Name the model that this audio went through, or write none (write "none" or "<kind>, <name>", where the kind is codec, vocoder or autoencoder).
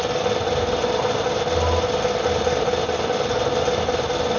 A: none